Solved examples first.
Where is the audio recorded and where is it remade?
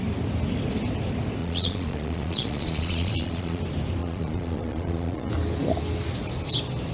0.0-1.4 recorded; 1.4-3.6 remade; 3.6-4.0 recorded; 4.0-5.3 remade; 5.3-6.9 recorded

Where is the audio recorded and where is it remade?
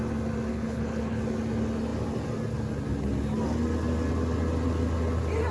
0.0-0.5 recorded; 0.5-1.2 remade; 1.2-5.5 recorded